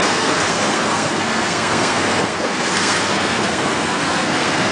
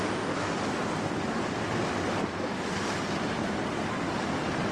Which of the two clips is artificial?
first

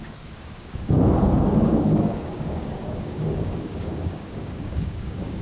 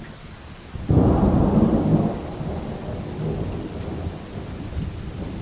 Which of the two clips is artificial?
first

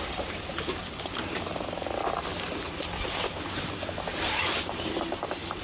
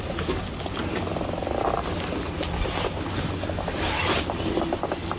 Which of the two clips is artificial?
first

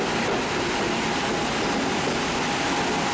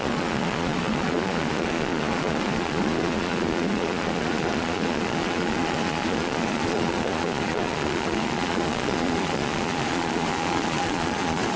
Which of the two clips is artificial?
second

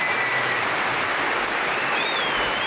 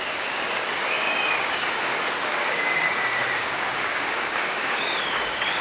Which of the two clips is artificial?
second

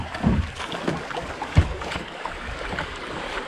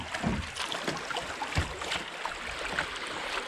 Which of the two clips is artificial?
first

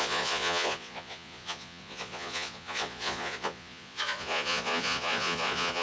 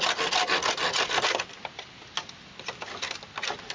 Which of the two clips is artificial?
first